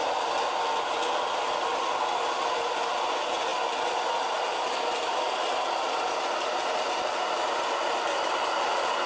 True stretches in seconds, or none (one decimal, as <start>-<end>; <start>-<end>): 0.0-9.1